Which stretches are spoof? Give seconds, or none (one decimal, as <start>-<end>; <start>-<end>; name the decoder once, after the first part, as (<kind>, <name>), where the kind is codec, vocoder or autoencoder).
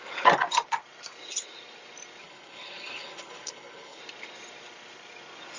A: 2.2-4.0 (codec, HILCodec)